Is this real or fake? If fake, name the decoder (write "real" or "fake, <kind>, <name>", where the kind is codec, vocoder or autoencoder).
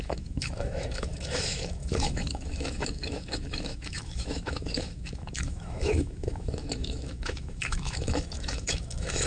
fake, autoencoder, DAC-VAE